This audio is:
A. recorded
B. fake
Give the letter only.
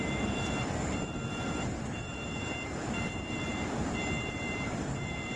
B